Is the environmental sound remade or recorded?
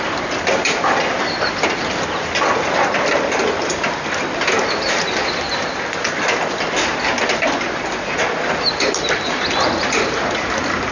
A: recorded